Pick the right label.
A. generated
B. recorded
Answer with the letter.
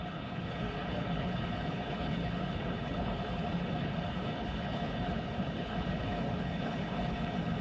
A